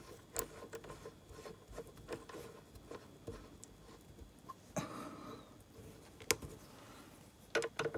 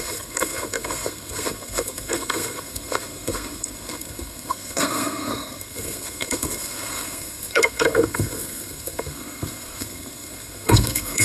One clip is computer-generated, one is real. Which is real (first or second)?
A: first